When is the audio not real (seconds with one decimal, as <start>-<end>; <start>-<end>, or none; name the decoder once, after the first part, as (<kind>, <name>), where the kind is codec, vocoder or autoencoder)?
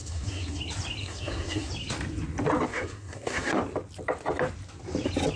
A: 0.0-0.6 (codec, SNAC); 1.0-1.7; 2.7-3.6